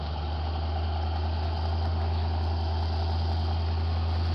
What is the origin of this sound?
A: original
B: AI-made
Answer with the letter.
A